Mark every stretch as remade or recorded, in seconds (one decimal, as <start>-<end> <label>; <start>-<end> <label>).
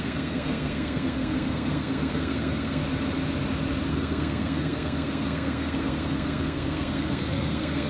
0.0-2.8 remade; 2.8-3.9 recorded; 3.9-7.9 remade